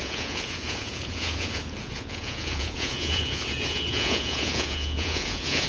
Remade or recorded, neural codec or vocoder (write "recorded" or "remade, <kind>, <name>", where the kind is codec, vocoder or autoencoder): remade, vocoder, Vocos